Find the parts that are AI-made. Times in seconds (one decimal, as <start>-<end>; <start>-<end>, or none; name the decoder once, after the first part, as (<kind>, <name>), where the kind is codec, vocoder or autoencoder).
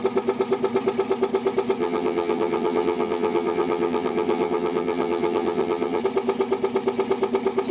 1.8-6.0 (vocoder, HiFi-GAN)